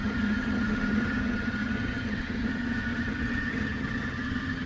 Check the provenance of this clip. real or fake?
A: fake